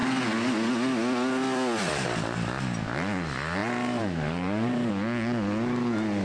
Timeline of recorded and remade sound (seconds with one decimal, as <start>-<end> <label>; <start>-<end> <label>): 0.0-3.6 recorded; 3.6-4.9 remade; 4.9-6.2 recorded